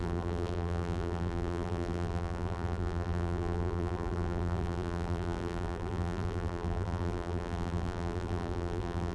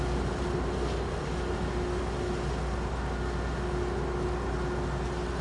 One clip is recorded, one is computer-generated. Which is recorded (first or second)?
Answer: second